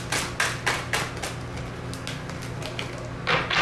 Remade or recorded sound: recorded